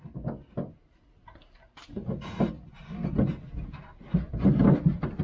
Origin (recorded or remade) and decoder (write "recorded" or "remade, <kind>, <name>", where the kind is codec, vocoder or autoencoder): recorded